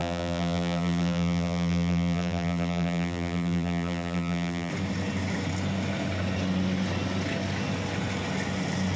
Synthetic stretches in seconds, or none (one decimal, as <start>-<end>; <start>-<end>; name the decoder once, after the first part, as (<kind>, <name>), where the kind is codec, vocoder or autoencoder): 0.0-4.7 (vocoder, BigVGAN v2)